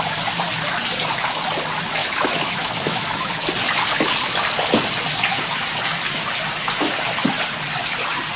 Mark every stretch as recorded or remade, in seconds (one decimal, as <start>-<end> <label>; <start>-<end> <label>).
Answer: 0.0-2.0 recorded; 2.0-3.3 remade; 3.3-8.4 recorded